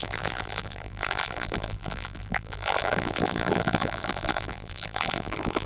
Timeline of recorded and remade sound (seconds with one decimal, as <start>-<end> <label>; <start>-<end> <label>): 0.0-5.7 remade